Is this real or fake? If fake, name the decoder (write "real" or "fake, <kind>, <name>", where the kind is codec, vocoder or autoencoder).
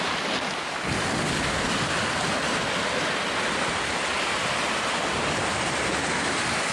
real